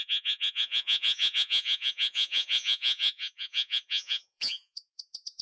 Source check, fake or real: fake